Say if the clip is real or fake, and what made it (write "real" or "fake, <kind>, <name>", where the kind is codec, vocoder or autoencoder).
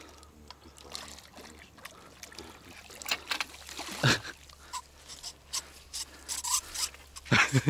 real